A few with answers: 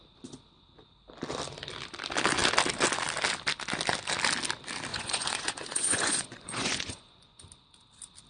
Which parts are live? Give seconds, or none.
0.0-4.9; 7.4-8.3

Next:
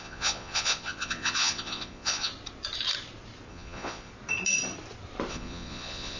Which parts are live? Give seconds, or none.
2.3-3.5; 4.1-5.3

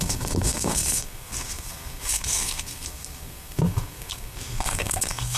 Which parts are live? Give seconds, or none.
none

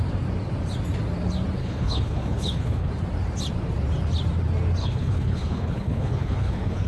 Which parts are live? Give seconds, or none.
0.0-1.6; 2.9-4.8

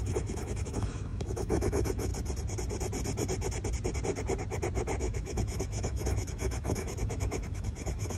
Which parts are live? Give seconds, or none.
2.1-5.0

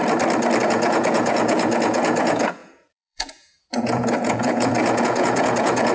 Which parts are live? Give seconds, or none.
0.0-0.6

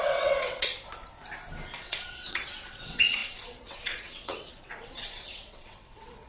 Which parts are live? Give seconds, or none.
0.7-1.8

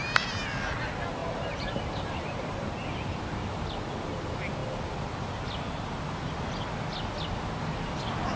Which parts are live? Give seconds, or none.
0.0-1.2; 3.2-8.4